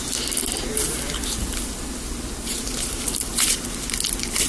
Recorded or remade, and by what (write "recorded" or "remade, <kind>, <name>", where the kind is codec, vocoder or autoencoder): recorded